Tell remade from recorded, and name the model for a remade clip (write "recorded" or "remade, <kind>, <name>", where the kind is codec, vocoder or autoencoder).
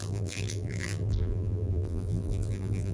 remade, vocoder, BigVGAN v2